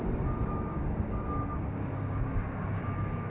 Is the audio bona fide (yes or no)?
no